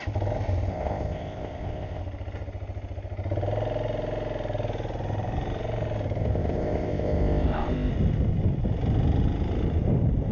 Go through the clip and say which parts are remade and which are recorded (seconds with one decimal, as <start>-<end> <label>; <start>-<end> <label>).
0.0-0.7 recorded; 0.7-2.0 remade; 2.0-6.2 recorded; 6.2-7.9 remade; 7.9-10.3 recorded